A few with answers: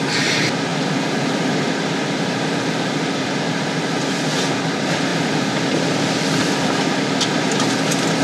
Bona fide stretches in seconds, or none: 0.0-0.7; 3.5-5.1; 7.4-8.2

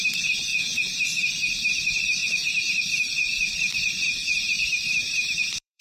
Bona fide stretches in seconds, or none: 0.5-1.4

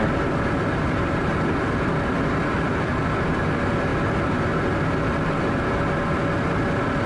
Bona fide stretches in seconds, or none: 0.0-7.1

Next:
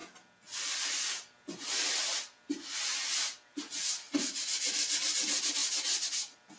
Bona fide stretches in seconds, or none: 0.0-4.0; 5.6-6.6

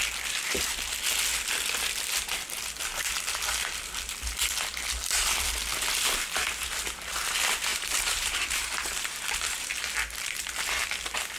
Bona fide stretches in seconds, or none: 0.0-7.7; 9.7-11.4

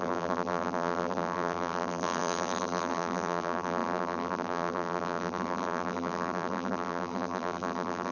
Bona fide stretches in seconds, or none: none

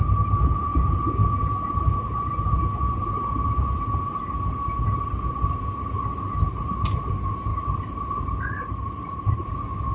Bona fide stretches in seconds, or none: 0.0-7.5

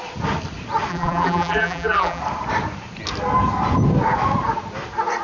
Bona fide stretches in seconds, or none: 0.0-0.9; 2.2-5.2